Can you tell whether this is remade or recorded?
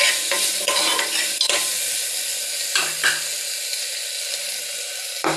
recorded